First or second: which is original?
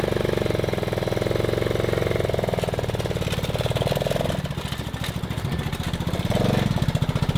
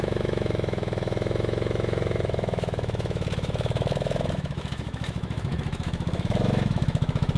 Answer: first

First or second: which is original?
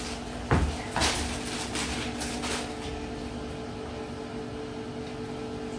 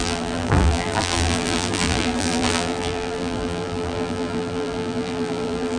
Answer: first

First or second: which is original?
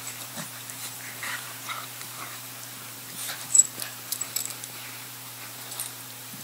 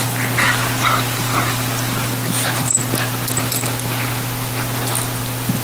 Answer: second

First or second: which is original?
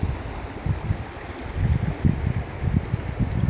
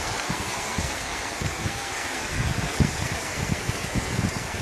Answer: first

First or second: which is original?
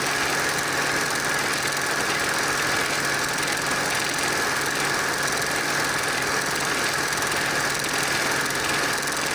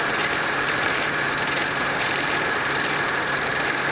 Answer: first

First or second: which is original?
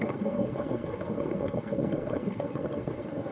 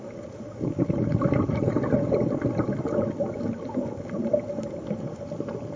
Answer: second